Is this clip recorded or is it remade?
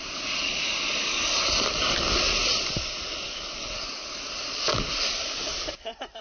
recorded